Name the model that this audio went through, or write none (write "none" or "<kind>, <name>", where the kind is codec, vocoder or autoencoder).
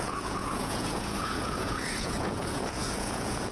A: vocoder, Vocos